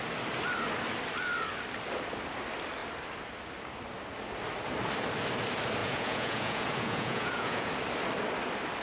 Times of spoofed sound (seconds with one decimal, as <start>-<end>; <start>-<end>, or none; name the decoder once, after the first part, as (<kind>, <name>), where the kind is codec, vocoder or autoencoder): 5.8-7.7 (vocoder, Vocos)